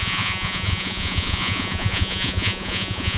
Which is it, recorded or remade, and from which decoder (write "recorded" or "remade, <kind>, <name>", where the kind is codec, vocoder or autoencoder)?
remade, vocoder, Vocos